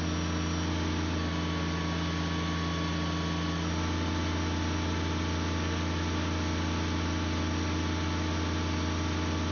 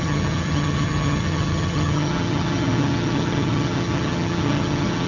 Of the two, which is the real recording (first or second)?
first